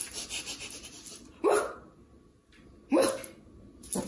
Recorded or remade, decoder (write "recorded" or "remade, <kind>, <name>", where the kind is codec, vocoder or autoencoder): recorded